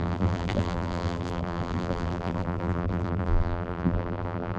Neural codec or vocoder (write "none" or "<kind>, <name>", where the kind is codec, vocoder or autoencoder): vocoder, BigVGAN v2